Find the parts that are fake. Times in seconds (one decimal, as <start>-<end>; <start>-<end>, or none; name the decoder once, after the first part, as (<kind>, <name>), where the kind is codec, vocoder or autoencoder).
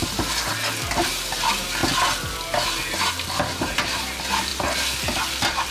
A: 1.1-1.8 (vocoder, BigVGAN v2); 3.6-4.5